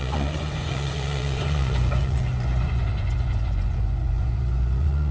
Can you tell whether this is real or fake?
fake